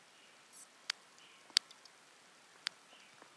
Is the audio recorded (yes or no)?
yes